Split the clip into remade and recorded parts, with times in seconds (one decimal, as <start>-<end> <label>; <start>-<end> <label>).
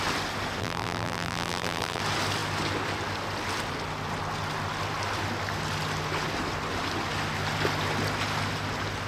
0.0-0.6 recorded; 0.6-2.0 remade; 2.0-9.1 recorded